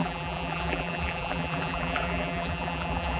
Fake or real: fake